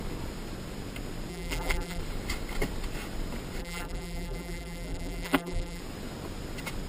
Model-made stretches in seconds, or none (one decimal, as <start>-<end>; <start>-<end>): 1.3-2.0; 3.6-5.8